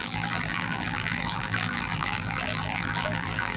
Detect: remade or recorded remade